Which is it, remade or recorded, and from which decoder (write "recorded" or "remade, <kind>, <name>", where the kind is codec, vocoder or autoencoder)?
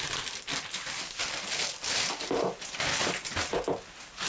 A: recorded